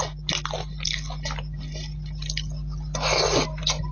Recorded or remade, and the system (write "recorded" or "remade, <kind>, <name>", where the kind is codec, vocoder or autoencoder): recorded